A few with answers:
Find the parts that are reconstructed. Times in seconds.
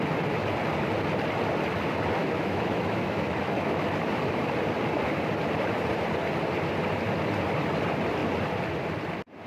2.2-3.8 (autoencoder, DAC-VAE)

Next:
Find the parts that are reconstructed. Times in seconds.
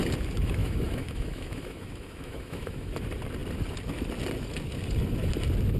0.6-2.9 (autoencoder, DAC-VAE)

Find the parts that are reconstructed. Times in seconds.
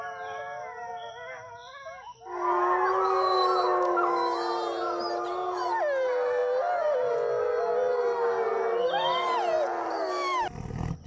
none